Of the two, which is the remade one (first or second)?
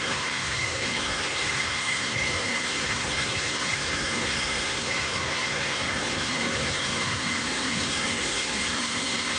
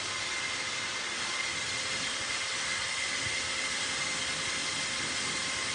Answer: first